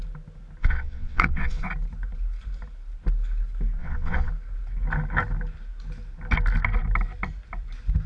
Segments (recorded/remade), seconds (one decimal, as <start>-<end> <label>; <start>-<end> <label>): 0.0-0.6 recorded; 0.6-1.7 remade; 1.7-3.8 recorded; 3.8-4.3 remade; 4.3-8.1 recorded